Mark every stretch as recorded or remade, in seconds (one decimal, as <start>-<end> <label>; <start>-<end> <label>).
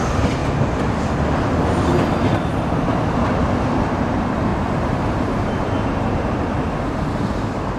0.0-0.4 remade; 0.4-3.9 recorded; 3.9-7.8 remade